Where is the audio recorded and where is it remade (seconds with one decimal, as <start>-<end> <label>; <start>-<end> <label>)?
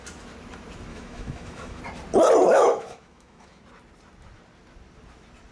0.0-0.9 recorded; 0.9-1.8 remade; 1.8-2.5 recorded; 2.5-3.6 remade; 3.6-5.5 recorded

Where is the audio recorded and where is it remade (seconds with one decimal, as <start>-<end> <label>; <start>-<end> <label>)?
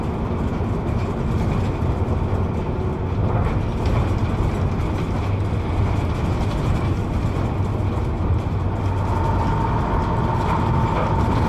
0.0-11.5 recorded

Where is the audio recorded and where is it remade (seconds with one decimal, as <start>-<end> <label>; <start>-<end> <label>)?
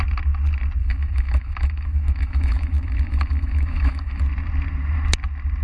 0.0-0.8 recorded; 0.8-4.2 remade; 4.2-5.6 recorded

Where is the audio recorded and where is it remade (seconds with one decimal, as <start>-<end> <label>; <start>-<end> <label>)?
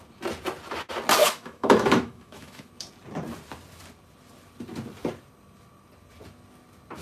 0.0-1.2 recorded; 1.2-2.7 remade; 2.7-7.0 recorded